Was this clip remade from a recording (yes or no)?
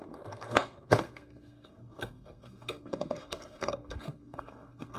yes